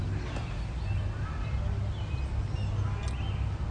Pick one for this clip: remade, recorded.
recorded